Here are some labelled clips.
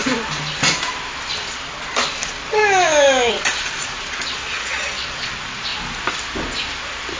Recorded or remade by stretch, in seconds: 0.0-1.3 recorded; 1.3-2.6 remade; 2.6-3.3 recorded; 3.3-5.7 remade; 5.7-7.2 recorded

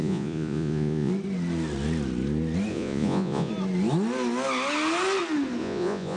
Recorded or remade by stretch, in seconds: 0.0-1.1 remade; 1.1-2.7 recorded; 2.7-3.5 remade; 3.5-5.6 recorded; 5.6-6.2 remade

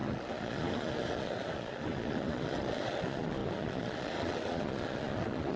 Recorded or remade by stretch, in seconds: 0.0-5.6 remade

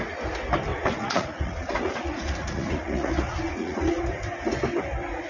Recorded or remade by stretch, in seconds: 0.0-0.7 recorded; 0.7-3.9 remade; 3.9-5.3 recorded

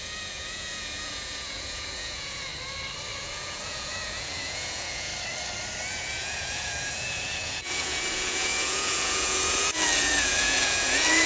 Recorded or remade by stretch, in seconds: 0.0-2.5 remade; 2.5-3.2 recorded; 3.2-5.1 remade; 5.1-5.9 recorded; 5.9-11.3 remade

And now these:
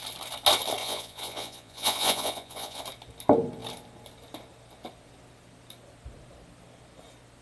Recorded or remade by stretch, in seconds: 0.0-0.8 recorded; 0.8-2.8 remade; 2.8-7.4 recorded

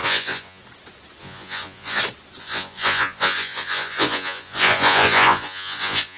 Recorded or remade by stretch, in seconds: 0.0-0.6 remade; 0.6-1.2 recorded; 1.2-2.0 remade; 2.0-2.4 recorded; 2.4-6.2 remade